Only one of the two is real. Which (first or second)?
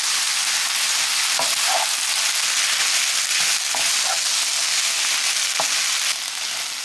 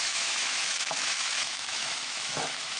first